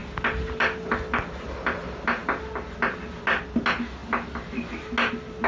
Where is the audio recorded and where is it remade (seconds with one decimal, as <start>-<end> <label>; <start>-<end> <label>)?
0.0-5.5 recorded